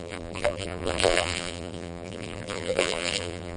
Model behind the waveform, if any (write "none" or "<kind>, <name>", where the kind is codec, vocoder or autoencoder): vocoder, BigVGAN v2